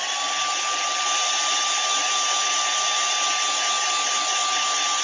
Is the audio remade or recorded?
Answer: recorded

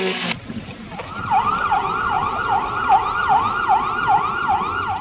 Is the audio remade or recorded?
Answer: recorded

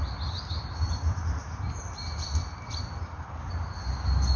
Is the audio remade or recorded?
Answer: recorded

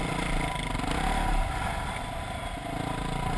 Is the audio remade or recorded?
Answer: recorded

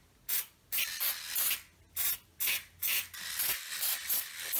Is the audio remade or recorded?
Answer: recorded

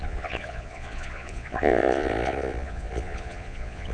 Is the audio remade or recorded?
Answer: remade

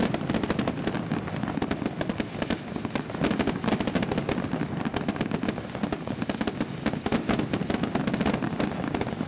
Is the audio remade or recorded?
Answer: recorded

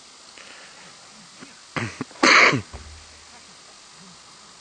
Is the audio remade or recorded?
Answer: recorded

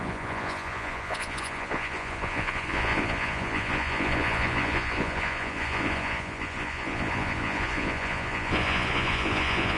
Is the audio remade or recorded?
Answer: remade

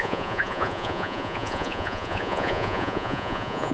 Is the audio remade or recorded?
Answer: remade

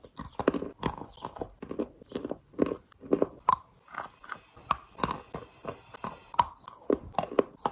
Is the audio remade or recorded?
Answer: recorded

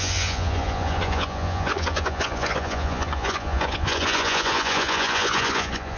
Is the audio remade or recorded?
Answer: remade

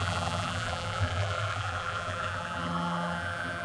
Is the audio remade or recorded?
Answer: remade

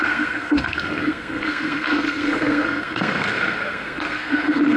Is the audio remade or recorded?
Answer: remade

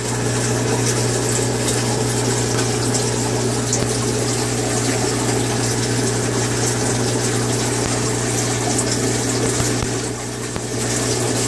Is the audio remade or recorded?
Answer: recorded